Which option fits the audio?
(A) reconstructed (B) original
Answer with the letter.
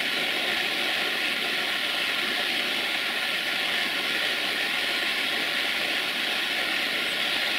B